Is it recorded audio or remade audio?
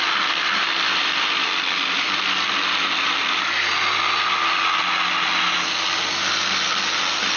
recorded